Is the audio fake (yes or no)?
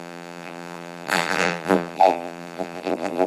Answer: yes